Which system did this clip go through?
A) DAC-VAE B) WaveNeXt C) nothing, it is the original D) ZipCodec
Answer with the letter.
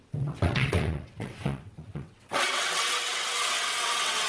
B